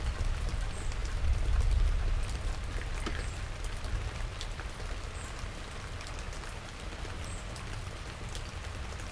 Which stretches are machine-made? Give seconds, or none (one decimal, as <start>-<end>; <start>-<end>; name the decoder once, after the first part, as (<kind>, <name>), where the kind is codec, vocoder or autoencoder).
1.0-3.9 (vocoder, BigVGAN v2); 4.3-5.2